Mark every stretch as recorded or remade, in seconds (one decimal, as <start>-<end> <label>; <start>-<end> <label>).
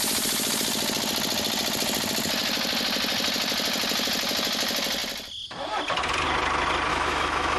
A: 0.0-6.9 recorded; 6.9-7.6 remade